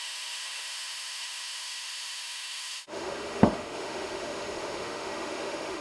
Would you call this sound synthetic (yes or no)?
yes